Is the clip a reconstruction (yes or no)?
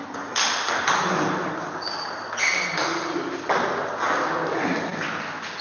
no